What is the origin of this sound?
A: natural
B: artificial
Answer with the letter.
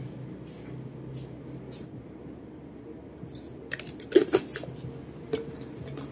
A